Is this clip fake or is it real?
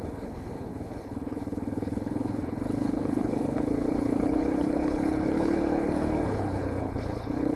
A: fake